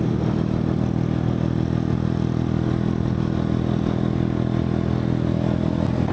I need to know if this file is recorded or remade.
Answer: recorded